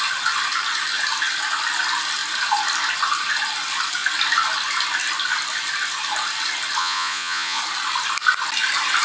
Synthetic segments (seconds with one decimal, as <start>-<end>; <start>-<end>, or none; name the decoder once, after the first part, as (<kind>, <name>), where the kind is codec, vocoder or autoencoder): 6.8-7.6 (vocoder, Vocos)

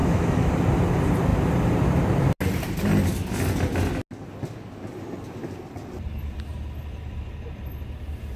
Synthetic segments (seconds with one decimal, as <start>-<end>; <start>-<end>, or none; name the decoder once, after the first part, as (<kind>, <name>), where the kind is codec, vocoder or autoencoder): 0.0-0.5 (autoencoder, DAC-VAE)